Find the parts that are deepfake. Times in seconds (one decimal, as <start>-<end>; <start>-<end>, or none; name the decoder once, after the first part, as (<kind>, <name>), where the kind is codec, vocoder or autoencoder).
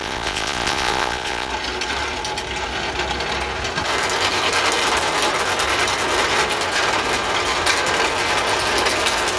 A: 0.0-1.5 (vocoder, Vocos)